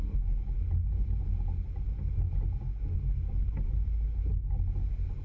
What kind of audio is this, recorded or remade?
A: recorded